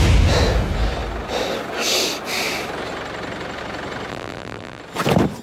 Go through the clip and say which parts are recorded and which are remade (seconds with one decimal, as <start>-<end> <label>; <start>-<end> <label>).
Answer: 0.0-4.1 recorded; 4.1-4.8 remade; 4.8-5.4 recorded